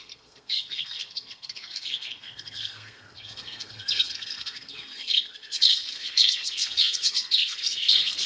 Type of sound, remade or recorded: remade